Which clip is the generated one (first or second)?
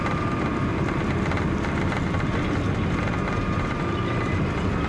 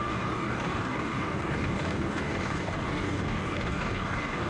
second